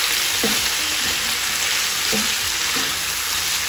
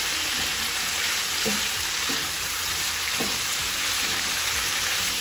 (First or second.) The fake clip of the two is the second